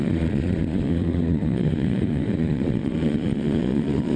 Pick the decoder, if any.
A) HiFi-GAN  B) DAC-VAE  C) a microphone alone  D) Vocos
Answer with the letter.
D